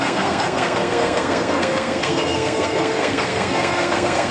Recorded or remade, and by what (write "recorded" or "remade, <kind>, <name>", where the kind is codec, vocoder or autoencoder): remade, codec, SNAC